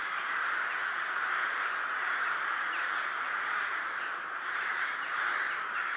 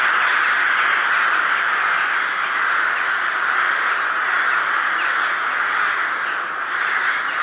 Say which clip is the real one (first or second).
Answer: second